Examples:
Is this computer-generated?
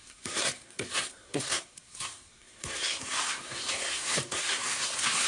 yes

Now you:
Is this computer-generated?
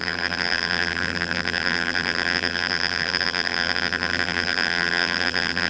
yes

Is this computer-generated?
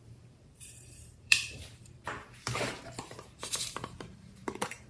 yes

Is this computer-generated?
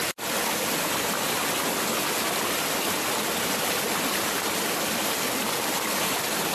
no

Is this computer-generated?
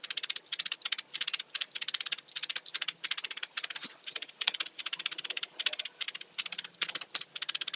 no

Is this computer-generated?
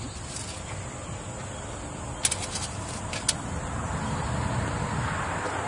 no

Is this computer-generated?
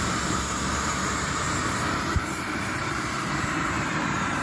yes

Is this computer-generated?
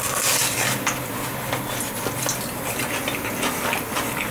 no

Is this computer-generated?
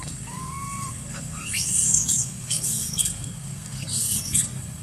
yes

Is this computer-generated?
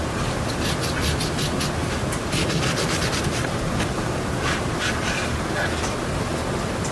no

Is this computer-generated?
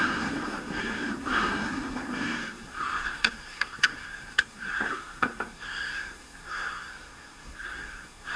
yes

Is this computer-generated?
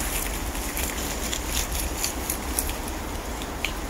yes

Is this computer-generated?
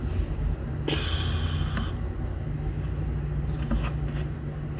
no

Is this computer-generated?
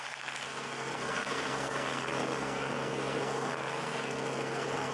yes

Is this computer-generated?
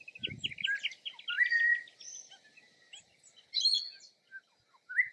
no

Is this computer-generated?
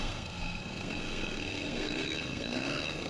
yes